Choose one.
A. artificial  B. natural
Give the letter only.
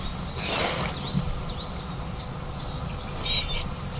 B